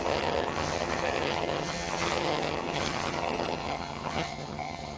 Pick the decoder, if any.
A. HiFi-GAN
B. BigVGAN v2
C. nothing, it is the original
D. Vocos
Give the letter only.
A